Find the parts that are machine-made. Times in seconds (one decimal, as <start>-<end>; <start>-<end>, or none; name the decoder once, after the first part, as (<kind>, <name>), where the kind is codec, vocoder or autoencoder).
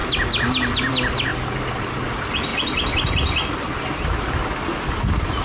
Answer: none